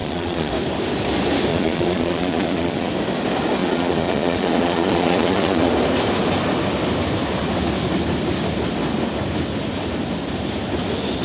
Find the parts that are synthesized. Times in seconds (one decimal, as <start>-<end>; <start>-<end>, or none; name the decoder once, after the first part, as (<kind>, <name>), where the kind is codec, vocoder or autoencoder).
0.0-0.5 (vocoder, Vocos); 1.5-2.9; 3.6-5.7